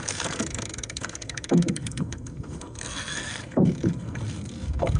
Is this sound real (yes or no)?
no